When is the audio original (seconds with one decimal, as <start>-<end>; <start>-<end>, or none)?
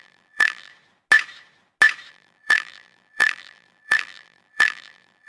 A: 0.7-2.1